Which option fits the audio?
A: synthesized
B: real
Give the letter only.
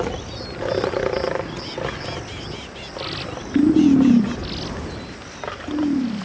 B